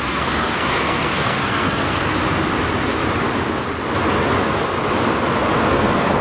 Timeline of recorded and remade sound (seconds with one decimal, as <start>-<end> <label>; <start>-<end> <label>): 0.0-2.1 remade; 2.1-5.7 recorded; 5.7-6.2 remade